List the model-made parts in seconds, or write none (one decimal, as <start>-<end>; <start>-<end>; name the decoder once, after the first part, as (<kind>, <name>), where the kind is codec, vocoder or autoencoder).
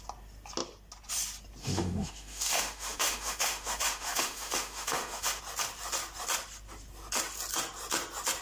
1.6-5.4 (autoencoder, DAC-VAE)